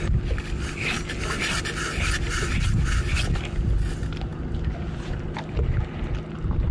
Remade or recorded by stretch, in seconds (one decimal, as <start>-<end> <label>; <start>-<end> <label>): 0.0-6.7 recorded